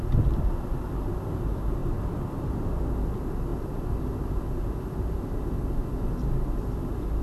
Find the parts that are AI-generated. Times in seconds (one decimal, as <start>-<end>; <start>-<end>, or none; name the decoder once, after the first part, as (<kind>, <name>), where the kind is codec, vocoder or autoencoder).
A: 1.8-2.9 (vocoder, BigVGAN v2)